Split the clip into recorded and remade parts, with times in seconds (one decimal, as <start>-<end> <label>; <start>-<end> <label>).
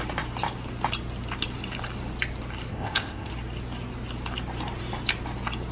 0.0-2.7 recorded; 2.7-3.3 remade; 3.3-5.7 recorded